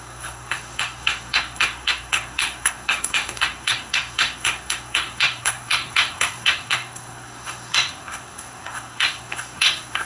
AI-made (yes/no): yes